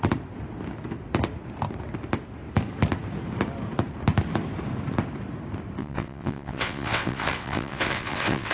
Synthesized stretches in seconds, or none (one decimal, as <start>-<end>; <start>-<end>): 5.8-8.5